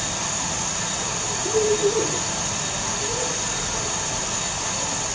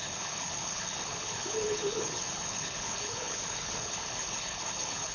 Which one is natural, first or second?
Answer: first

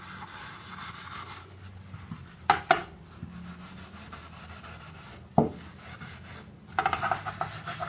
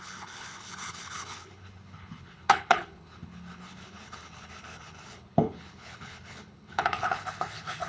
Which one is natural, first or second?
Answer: first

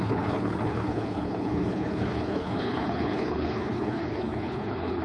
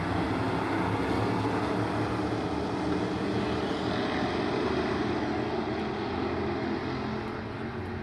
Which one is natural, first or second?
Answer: second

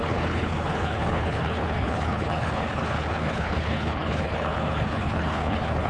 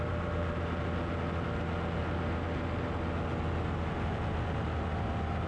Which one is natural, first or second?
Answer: second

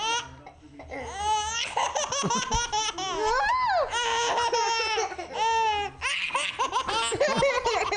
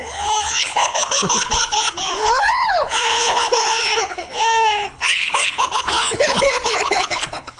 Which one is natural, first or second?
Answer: first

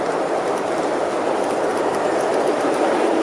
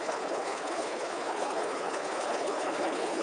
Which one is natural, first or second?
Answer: first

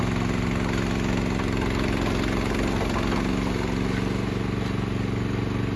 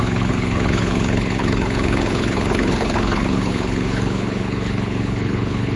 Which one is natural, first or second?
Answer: first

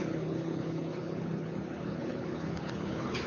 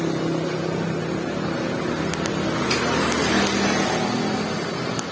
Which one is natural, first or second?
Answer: second